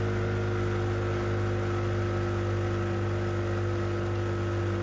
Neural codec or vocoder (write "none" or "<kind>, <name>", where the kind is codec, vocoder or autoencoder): none